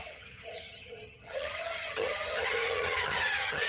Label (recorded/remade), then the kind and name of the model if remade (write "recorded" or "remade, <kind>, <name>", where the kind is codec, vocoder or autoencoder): remade, vocoder, HiFi-GAN